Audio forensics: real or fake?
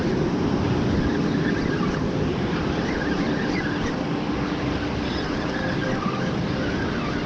real